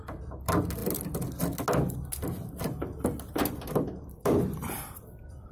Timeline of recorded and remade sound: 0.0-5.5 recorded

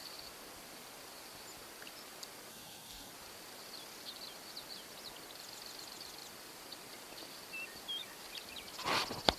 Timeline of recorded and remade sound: 0.0-2.5 recorded; 2.5-3.1 remade; 3.1-9.4 recorded

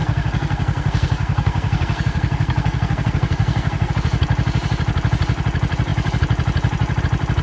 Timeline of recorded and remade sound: 0.0-3.9 remade; 3.9-7.4 recorded

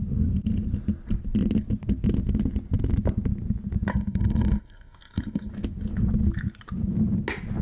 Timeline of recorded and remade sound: 0.0-3.9 recorded; 3.9-5.5 remade; 5.5-7.6 recorded

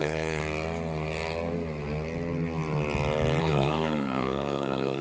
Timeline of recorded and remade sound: 0.0-0.4 remade; 0.4-3.4 recorded; 3.4-5.0 remade